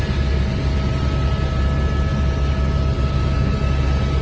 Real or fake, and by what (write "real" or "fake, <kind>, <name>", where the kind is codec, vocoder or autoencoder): real